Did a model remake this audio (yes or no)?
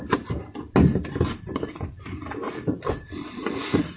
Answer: no